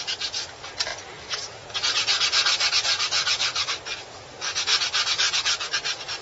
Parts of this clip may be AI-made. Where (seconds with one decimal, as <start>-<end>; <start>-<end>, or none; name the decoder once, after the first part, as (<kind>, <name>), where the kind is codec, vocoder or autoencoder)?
none